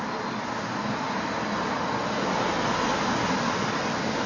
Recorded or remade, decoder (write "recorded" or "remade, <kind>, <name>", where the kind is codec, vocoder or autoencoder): recorded